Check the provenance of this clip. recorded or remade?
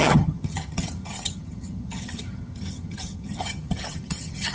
remade